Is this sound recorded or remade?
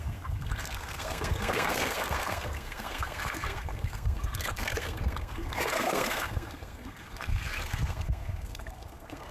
remade